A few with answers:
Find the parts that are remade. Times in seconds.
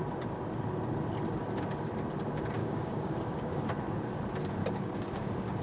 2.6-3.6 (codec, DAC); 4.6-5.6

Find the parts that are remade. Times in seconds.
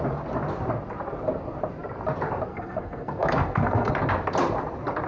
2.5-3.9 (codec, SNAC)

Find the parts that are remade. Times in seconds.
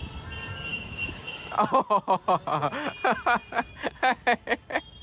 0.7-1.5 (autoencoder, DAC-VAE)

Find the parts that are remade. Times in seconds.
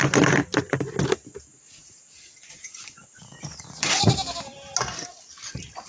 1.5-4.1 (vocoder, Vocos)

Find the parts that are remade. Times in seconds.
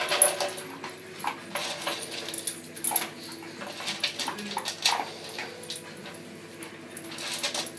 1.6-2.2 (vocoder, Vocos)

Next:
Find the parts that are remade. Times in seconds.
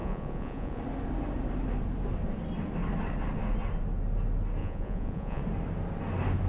0.0-0.8 (vocoder, Vocos); 4.6-5.4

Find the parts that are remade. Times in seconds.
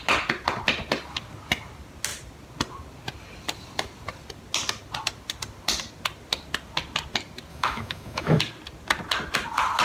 7.5-8.4 (autoencoder, DAC-VAE)